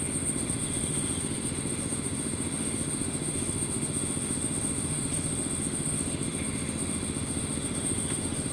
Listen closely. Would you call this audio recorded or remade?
remade